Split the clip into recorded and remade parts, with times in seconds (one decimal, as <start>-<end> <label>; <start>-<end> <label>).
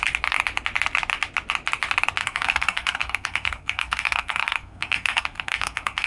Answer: 0.0-2.2 recorded; 2.2-6.1 remade